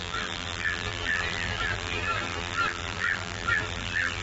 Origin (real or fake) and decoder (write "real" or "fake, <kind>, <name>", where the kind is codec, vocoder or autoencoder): fake, vocoder, BigVGAN v2